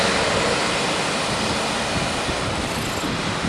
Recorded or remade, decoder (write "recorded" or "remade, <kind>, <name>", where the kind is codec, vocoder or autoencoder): recorded